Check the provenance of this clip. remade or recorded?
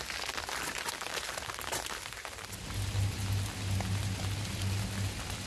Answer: recorded